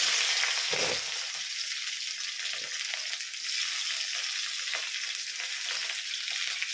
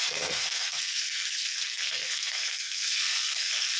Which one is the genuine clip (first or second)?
first